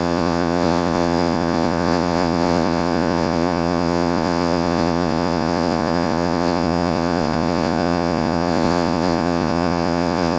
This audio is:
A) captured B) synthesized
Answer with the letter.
B